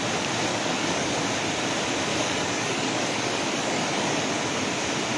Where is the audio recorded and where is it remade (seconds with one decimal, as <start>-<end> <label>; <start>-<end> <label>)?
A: 0.0-0.5 recorded; 0.5-1.1 remade; 1.1-2.1 recorded; 2.1-4.3 remade; 4.3-5.2 recorded